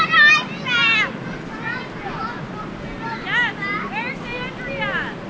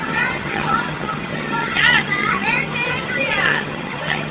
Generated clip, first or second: second